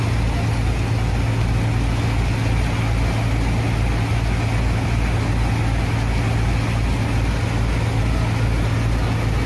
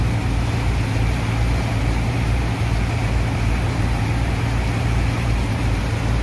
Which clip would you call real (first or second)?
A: first